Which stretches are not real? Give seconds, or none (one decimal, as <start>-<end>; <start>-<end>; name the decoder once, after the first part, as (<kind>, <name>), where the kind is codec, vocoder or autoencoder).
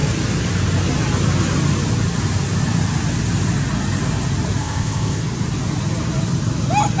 4.6-5.2 (codec, ZipCodec)